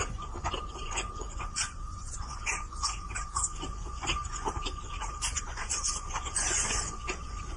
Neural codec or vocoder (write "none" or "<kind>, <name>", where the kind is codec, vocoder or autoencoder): vocoder, Vocos